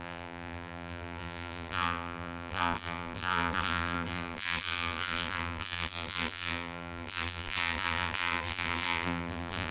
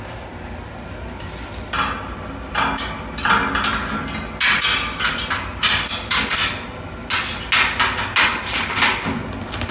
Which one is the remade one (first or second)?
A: first